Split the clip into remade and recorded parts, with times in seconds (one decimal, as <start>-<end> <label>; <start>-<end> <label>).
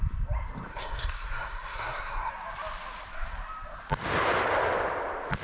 0.0-0.7 recorded; 0.7-2.3 remade; 2.3-5.4 recorded